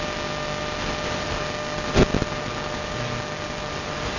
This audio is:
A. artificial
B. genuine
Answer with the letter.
B